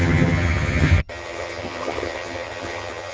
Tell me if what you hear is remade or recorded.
remade